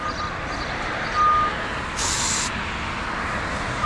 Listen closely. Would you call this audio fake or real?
real